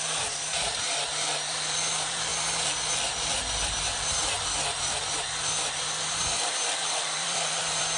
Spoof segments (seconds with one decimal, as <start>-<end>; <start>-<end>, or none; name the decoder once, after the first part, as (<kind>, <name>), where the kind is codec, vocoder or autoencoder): 0.0-2.3 (vocoder, BigVGAN v2); 6.5-8.0